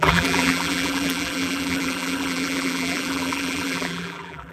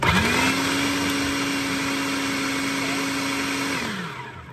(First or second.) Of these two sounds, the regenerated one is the first